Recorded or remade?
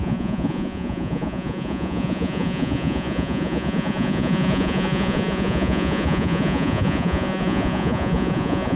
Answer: remade